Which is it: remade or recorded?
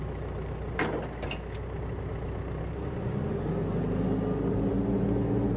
recorded